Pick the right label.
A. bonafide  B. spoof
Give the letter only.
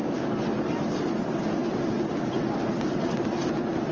A